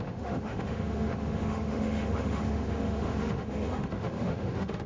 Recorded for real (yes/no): no